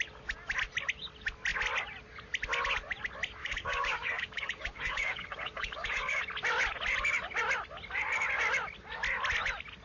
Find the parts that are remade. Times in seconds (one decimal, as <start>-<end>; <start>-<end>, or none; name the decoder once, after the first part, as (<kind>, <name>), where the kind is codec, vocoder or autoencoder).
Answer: 3.4-6.2 (codec, DAC)